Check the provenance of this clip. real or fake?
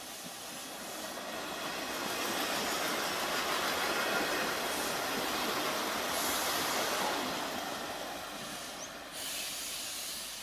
real